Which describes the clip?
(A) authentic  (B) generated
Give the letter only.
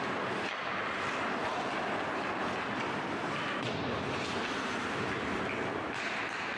A